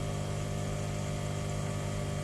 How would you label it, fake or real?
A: real